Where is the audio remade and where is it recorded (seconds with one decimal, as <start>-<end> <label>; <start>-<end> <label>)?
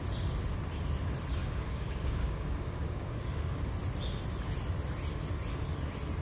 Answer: 0.0-1.4 recorded; 1.4-3.6 remade; 3.6-6.2 recorded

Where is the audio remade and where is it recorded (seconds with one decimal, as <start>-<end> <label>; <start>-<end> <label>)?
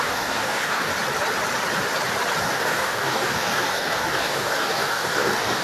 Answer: 0.0-0.9 remade; 0.9-2.4 recorded; 2.4-5.6 remade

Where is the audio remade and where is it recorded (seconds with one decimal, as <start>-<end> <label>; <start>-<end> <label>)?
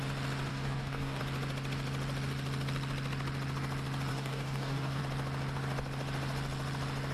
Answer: 0.0-0.5 recorded; 0.5-1.2 remade; 1.2-4.1 recorded; 4.1-5.0 remade; 5.0-7.1 recorded